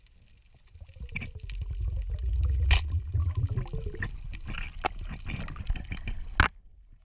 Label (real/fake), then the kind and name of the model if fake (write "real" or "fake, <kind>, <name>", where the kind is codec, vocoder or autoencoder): real